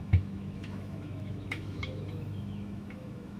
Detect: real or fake fake